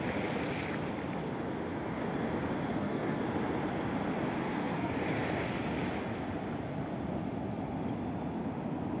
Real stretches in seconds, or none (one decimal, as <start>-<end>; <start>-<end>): 0.0-2.7; 3.2-4.4; 4.9-9.0